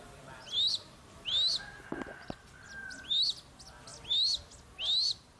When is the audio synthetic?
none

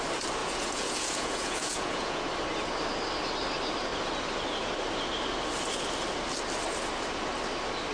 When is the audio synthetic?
0.4-2.3 (vocoder, Vocos)

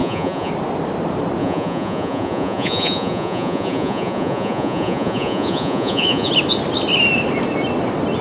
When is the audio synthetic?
0.0-0.5 (vocoder, Vocos); 1.4-6.3

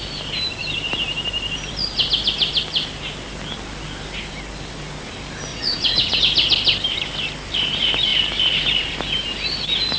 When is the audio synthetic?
5.5-6.2 (vocoder, Vocos)

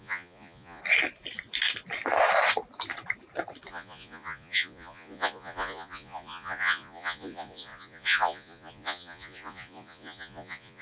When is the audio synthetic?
0.0-0.8 (vocoder, Vocos); 3.7-10.8

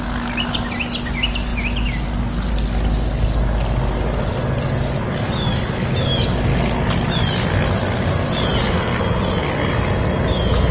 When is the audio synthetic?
none